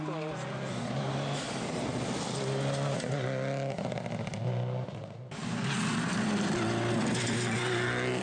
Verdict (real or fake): real